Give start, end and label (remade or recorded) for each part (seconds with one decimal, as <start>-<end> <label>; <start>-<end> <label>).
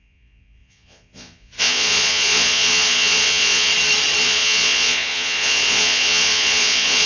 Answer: 0.0-3.7 remade; 3.7-4.2 recorded; 4.2-7.1 remade